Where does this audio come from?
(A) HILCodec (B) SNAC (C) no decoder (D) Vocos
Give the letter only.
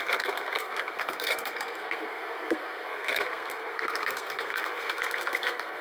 B